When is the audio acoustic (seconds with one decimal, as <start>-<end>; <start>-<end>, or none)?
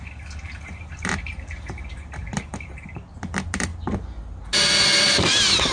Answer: 3.7-5.0